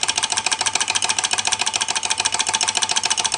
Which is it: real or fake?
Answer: real